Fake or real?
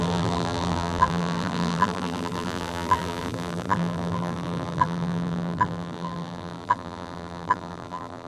fake